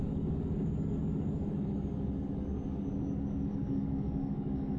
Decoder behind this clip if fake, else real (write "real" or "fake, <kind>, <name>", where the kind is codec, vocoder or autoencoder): fake, codec, DAC